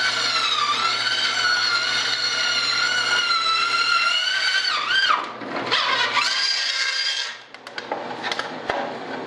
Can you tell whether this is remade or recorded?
recorded